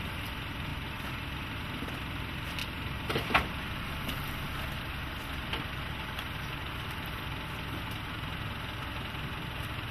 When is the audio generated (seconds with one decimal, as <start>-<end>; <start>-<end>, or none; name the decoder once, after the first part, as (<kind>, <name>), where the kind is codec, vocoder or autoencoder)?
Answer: none